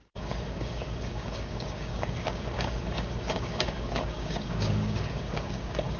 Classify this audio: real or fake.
fake